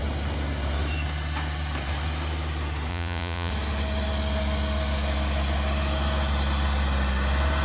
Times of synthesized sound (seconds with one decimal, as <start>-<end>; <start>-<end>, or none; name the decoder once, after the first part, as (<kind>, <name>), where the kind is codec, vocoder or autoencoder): 2.9-3.5 (vocoder, Vocos)